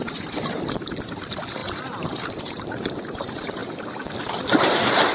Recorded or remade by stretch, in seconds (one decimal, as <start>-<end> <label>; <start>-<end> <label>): 0.0-3.6 remade; 3.6-4.6 recorded; 4.6-5.1 remade